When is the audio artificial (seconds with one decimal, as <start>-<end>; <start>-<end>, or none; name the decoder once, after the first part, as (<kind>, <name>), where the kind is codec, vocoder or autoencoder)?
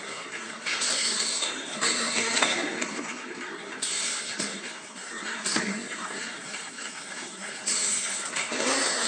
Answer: 0.0-9.1 (codec, SNAC)